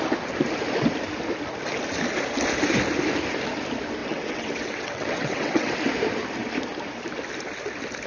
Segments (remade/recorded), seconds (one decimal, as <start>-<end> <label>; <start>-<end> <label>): 0.0-4.0 recorded; 4.0-5.7 remade; 5.7-8.1 recorded